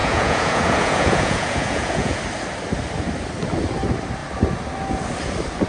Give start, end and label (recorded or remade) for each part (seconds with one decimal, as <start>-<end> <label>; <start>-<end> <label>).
0.0-2.2 remade; 2.2-5.7 recorded